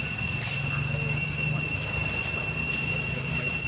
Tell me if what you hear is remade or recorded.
recorded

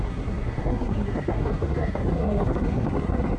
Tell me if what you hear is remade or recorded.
remade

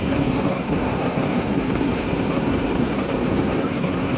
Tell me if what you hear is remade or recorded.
remade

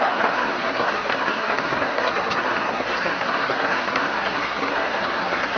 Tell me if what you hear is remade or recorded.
remade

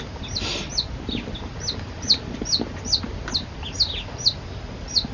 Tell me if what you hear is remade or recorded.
recorded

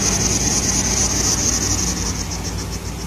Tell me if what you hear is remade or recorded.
recorded